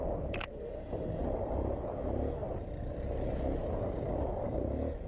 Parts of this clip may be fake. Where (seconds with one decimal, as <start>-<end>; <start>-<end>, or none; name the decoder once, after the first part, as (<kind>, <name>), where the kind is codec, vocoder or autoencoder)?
0.5-1.2 (autoencoder, DAC-VAE)